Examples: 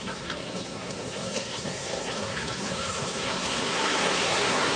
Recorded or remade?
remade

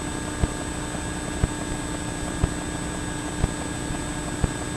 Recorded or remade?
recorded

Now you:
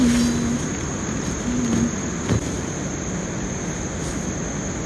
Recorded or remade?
recorded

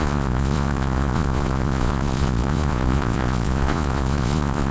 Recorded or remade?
remade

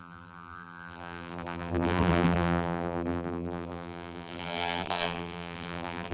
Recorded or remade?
remade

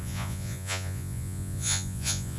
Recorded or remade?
remade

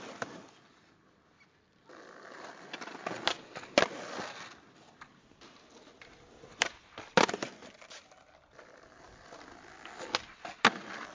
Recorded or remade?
recorded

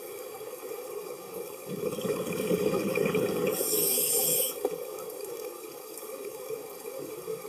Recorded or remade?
remade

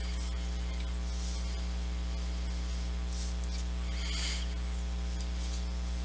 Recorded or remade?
recorded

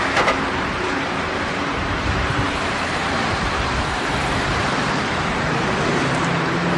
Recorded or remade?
remade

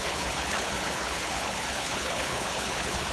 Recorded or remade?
remade